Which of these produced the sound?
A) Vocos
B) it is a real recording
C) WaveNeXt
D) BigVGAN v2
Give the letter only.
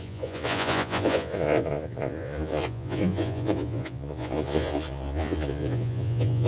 A